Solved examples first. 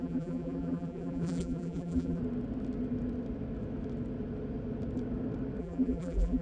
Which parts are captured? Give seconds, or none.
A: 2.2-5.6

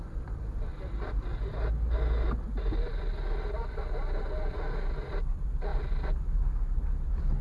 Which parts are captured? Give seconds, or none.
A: 0.7-5.1; 5.7-6.4

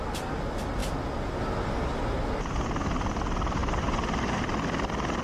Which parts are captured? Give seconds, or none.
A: 0.0-5.2

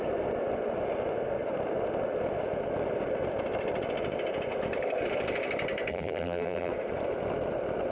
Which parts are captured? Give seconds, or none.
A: 0.0-5.9; 6.7-7.9